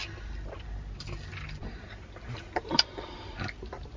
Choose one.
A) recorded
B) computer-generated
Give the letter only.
A